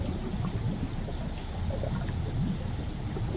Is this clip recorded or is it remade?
recorded